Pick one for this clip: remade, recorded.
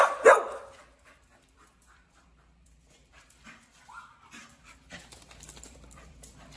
remade